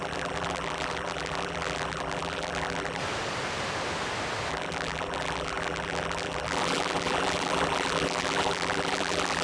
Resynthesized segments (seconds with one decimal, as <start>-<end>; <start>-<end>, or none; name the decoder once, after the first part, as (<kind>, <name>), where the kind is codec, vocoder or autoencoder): 0.0-3.0 (vocoder, BigVGAN v2); 4.5-9.4